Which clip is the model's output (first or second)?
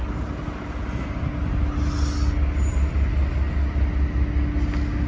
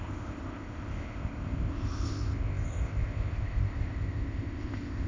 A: second